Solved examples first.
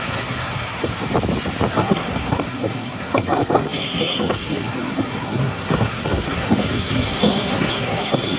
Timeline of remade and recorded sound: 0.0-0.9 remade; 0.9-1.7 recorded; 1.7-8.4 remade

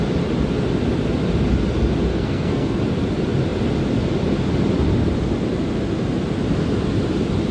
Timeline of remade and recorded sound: 0.0-2.1 recorded; 2.1-2.8 remade; 2.8-7.5 recorded

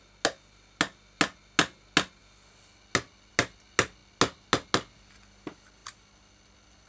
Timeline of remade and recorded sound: 0.0-6.9 recorded

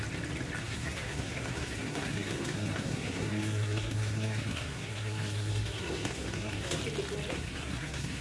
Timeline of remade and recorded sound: 0.0-0.6 recorded; 0.6-6.8 remade; 6.8-7.3 recorded; 7.3-8.2 remade

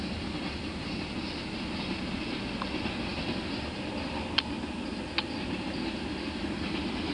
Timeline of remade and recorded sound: 0.0-7.1 recorded